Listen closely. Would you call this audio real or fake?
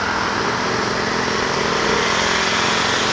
real